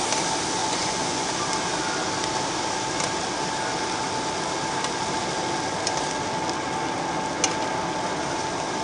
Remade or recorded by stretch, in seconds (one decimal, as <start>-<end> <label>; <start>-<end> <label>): 0.0-0.6 recorded; 0.6-1.3 remade; 1.3-8.8 recorded